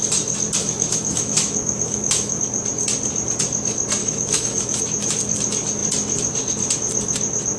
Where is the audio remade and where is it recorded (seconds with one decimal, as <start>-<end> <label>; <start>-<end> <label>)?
0.0-0.6 recorded; 0.6-2.4 remade; 2.4-4.0 recorded; 4.0-4.8 remade; 4.8-7.6 recorded